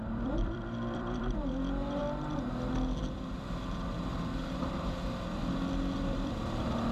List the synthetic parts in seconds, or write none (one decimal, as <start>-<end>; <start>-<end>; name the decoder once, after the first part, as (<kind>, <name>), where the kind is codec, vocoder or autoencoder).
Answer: 0.0-2.0 (vocoder, BigVGAN v2); 6.1-6.9

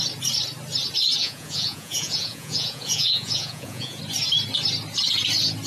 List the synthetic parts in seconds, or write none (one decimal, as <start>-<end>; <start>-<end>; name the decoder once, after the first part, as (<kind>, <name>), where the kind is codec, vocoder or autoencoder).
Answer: 1.2-4.0 (vocoder, Vocos)

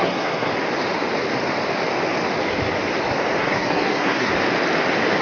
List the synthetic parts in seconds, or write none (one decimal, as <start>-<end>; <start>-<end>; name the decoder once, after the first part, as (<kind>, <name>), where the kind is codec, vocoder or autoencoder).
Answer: 0.0-0.5 (codec, SNAC); 3.4-4.3

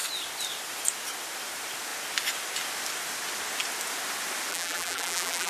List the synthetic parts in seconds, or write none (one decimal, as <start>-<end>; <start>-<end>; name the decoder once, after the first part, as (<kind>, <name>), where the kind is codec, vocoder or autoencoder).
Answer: 4.5-5.5 (vocoder, BigVGAN v2)

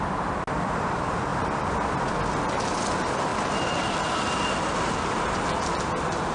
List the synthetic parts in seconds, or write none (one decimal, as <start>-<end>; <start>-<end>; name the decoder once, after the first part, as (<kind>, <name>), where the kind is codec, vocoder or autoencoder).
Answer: none

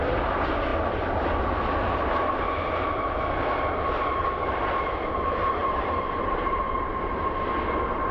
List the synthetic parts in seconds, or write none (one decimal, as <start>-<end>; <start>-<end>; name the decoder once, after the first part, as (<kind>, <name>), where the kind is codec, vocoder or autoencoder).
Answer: 5.6-6.6 (vocoder, BigVGAN v2)

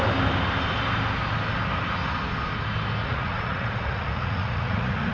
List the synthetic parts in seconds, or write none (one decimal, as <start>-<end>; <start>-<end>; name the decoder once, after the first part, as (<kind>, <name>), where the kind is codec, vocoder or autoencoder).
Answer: 3.0-5.1 (vocoder, Vocos)

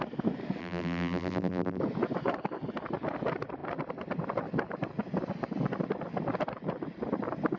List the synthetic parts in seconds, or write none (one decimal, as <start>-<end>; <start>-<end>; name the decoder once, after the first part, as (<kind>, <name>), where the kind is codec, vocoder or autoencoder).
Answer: 0.6-1.8 (vocoder, BigVGAN v2)